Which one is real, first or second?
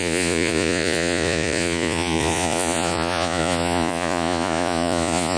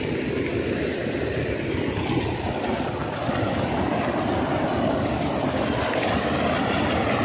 second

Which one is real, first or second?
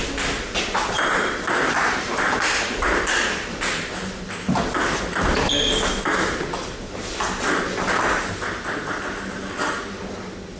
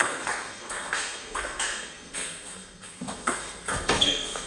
first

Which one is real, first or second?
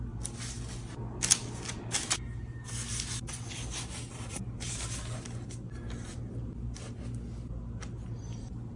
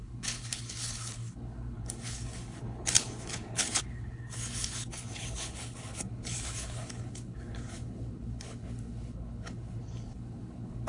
first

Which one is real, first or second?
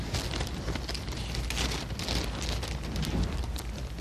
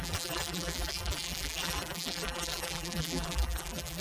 first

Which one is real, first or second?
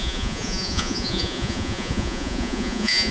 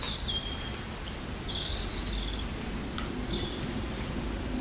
second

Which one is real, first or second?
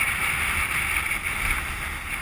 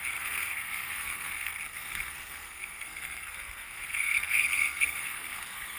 first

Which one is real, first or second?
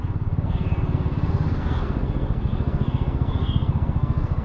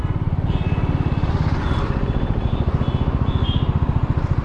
second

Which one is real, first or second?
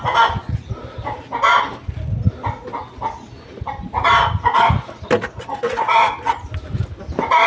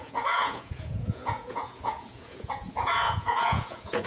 first